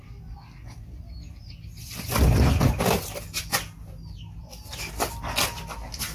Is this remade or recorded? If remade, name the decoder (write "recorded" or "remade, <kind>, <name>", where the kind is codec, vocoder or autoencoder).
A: recorded